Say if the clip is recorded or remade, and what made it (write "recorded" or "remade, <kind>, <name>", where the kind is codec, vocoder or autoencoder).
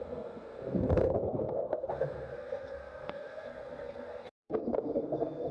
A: remade, codec, SNAC